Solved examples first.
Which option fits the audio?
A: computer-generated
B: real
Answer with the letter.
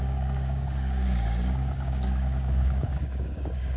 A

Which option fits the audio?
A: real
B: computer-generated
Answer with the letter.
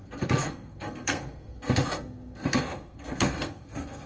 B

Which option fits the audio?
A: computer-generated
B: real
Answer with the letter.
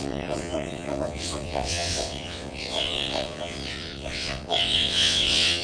A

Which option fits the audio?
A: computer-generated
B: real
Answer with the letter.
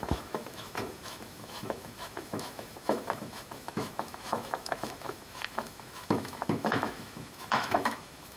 A